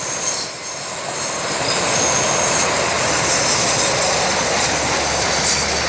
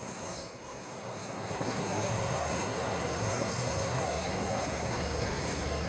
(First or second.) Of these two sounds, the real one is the first